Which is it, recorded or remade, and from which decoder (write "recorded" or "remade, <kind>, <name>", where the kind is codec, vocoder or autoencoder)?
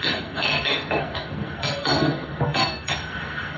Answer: remade, codec, SNAC